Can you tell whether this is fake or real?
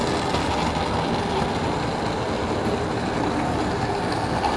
real